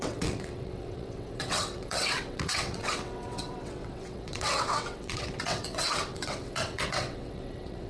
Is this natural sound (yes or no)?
no